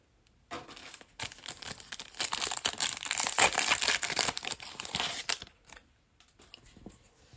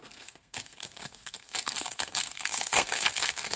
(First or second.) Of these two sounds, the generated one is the second